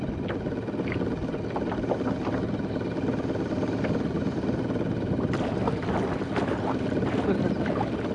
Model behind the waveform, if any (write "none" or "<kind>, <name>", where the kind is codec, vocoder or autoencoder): none